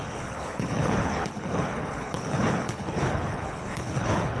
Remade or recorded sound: remade